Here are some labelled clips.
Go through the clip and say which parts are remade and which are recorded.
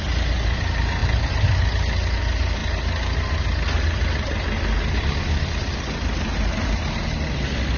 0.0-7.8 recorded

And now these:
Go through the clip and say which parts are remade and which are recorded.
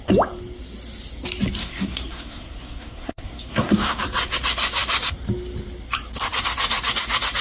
0.0-1.6 recorded; 1.6-4.0 remade; 4.0-7.4 recorded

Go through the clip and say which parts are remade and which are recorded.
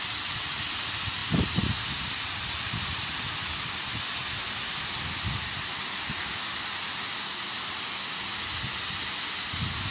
0.0-9.9 recorded